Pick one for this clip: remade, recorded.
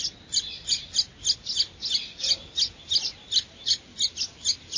recorded